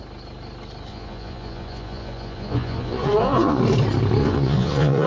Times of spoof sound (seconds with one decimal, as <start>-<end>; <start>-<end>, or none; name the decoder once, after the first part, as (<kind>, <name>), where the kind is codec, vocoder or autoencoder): 0.9-3.6 (vocoder, Vocos); 4.2-5.1